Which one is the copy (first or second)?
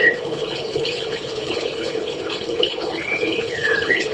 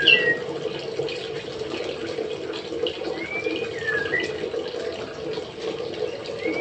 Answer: first